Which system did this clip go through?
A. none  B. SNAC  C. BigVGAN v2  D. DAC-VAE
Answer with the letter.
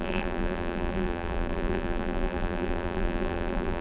C